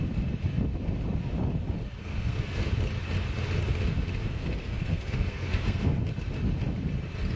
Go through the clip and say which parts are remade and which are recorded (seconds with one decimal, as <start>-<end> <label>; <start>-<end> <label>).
0.0-2.0 recorded; 2.0-2.7 remade; 2.7-4.2 recorded; 4.2-6.0 remade; 6.0-7.4 recorded